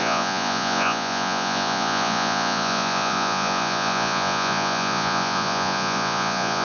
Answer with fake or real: fake